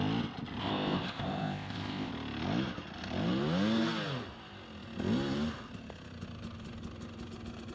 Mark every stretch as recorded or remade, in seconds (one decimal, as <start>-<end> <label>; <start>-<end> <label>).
0.0-0.6 recorded; 0.6-2.1 remade; 2.1-7.7 recorded

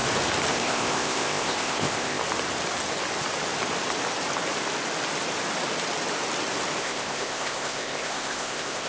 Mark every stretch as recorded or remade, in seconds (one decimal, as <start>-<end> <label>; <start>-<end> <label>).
0.0-0.5 recorded; 0.5-2.2 remade; 2.2-6.8 recorded; 6.8-8.9 remade